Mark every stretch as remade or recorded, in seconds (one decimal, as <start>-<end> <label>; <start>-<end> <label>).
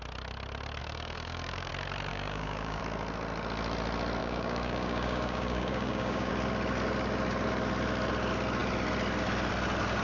0.0-0.8 recorded; 0.8-1.7 remade; 1.7-2.1 recorded; 2.1-2.8 remade; 2.8-4.2 recorded; 4.2-6.3 remade; 6.3-10.0 recorded